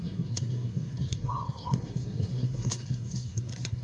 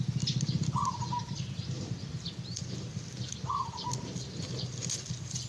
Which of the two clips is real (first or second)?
second